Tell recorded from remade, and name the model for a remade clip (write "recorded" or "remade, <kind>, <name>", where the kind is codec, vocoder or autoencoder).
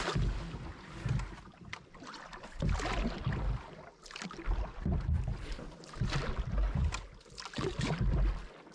recorded